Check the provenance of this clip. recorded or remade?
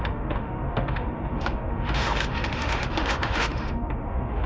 remade